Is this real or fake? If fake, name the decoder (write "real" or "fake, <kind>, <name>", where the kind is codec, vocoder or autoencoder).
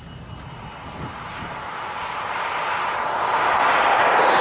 real